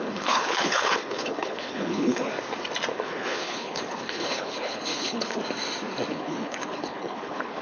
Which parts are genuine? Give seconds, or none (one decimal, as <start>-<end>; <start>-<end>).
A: 2.3-2.9; 5.4-6.1